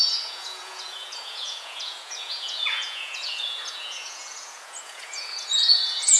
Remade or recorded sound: remade